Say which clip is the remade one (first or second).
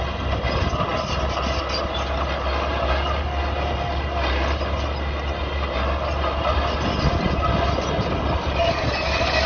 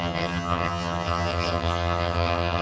second